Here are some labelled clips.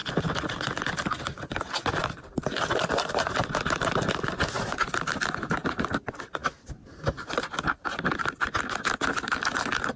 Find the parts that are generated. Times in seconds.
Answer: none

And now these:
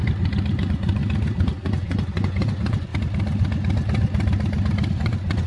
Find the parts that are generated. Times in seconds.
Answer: 0.6-1.0 (vocoder, Vocos); 1.6-2.9; 4.9-5.5